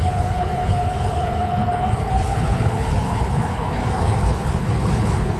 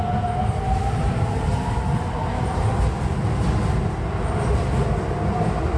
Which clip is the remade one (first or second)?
first